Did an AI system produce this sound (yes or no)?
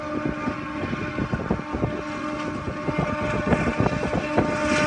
no